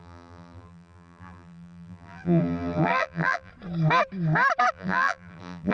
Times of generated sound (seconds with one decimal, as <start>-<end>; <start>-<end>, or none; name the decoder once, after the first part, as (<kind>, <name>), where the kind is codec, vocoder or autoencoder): 0.0-3.5 (vocoder, BigVGAN v2); 4.7-5.7